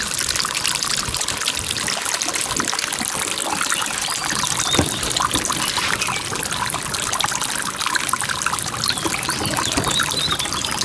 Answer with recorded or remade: recorded